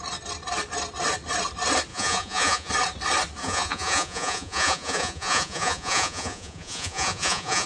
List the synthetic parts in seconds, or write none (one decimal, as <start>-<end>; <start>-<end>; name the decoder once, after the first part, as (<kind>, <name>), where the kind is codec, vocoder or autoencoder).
1.9-2.7 (vocoder, Vocos); 3.4-7.7